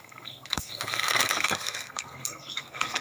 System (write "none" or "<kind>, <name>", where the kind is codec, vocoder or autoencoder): codec, SNAC